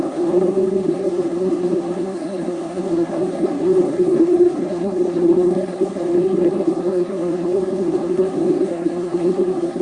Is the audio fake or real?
fake